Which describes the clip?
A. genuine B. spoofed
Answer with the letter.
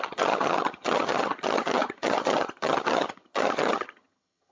B